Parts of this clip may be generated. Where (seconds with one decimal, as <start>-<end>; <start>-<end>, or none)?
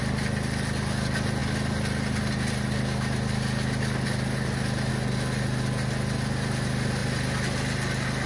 none